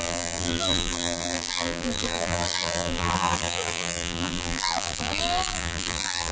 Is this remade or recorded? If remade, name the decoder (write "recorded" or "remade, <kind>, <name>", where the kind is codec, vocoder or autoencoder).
remade, vocoder, BigVGAN v2